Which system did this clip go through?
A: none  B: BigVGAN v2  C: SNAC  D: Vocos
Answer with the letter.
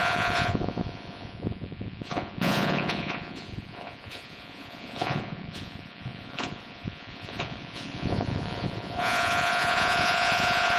D